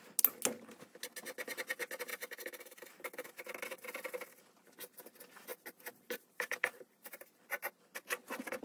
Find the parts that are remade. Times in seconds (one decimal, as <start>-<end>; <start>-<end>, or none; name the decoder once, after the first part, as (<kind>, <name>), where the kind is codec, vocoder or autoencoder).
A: 2.1-3.3 (vocoder, BigVGAN v2); 5.5-7.3